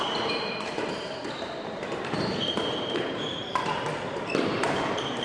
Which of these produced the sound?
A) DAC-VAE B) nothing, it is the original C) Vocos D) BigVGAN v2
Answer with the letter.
D